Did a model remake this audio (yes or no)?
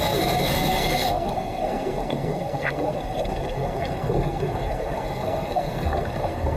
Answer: yes